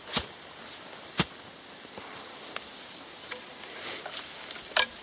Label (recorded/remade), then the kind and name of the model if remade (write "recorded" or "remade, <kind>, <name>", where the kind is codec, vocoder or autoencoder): recorded